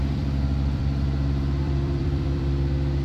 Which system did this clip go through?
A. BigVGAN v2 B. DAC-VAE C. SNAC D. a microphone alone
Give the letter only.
A